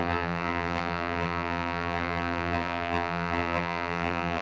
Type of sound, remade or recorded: remade